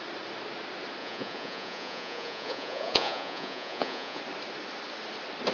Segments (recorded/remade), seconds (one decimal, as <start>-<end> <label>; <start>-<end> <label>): 0.0-1.0 recorded; 1.0-4.2 remade; 4.2-5.5 recorded